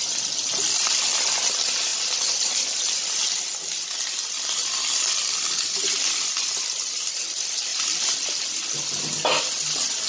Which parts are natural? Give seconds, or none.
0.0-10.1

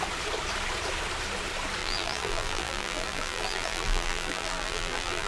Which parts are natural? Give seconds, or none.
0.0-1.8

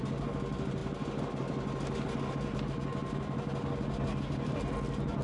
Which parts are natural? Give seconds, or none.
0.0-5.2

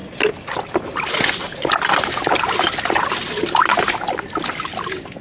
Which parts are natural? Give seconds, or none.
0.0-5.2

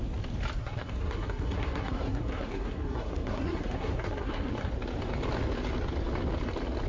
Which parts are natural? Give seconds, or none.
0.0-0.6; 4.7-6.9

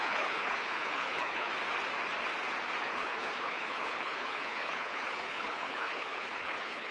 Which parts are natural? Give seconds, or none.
1.5-2.8

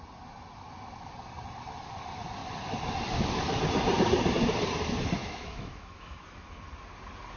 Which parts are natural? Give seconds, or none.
0.0-5.2; 6.5-7.4